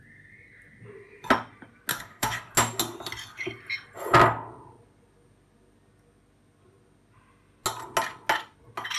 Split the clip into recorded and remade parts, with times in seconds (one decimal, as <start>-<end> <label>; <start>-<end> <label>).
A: 0.0-1.9 recorded; 1.9-2.5 remade; 2.5-9.0 recorded